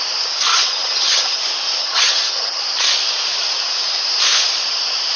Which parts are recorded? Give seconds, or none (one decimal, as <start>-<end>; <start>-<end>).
0.0-0.5; 1.4-1.8; 2.6-5.2